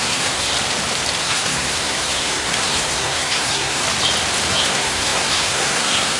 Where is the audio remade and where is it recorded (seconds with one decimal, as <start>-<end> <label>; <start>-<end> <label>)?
0.0-0.5 remade; 0.5-1.2 recorded; 1.2-3.8 remade; 3.8-4.5 recorded; 4.5-6.2 remade